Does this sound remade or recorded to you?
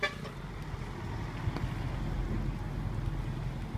recorded